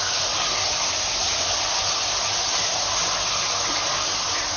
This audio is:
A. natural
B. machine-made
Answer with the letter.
A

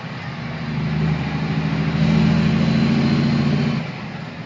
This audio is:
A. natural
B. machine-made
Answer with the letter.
A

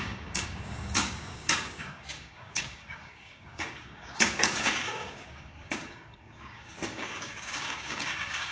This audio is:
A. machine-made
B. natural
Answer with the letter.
A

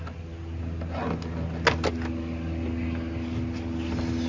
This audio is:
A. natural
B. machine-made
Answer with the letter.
A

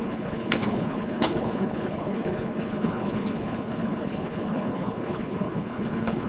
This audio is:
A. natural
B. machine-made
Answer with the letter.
B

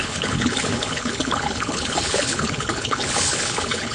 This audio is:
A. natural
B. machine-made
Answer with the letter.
B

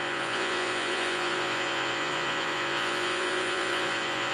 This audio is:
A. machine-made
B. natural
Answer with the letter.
A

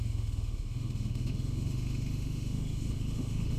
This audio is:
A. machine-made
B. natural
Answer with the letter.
A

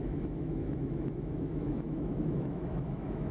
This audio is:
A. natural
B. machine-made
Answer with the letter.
B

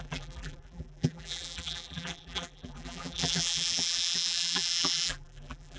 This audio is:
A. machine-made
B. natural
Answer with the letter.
A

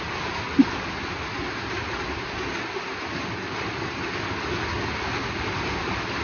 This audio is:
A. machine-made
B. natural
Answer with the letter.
B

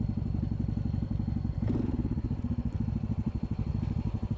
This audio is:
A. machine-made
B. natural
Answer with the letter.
B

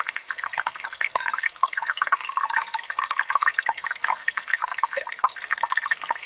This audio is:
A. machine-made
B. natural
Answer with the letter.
A